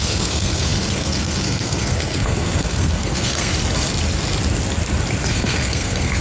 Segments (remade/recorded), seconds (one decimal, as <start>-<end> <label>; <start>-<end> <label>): 0.0-3.5 remade; 3.5-5.3 recorded; 5.3-6.2 remade